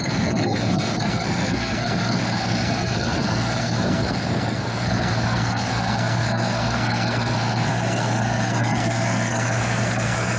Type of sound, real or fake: fake